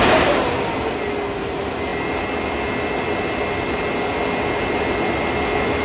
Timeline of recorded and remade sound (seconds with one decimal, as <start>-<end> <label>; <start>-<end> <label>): 0.0-5.8 recorded